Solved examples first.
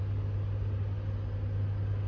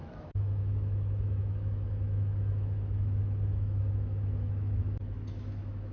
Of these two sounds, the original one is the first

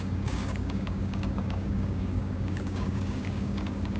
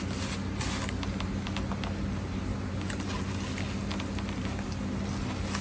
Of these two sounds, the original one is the second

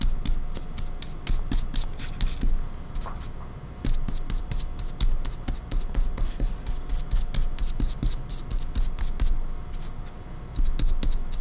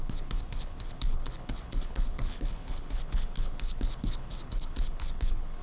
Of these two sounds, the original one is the first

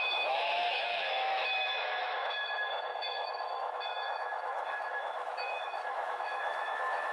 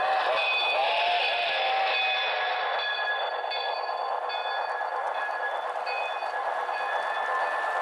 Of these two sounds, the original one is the second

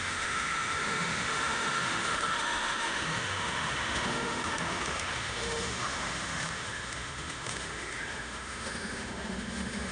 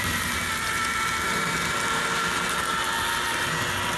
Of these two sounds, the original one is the second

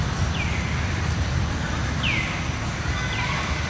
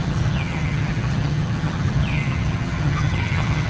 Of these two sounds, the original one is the first